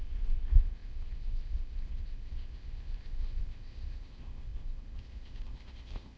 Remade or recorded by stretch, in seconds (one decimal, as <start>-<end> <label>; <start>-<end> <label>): 0.0-6.2 remade